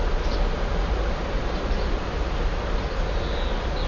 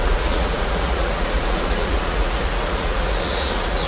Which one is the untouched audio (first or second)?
first